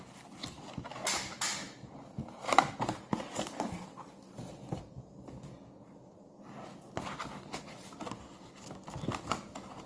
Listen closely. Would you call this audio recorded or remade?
recorded